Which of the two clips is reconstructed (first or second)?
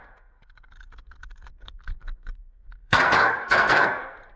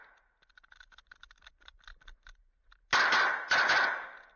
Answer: first